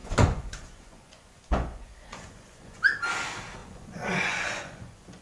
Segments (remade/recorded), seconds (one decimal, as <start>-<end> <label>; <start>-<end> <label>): 0.0-2.8 remade; 2.8-3.6 recorded; 3.6-5.2 remade